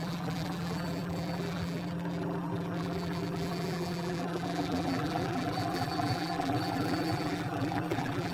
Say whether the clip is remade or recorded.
remade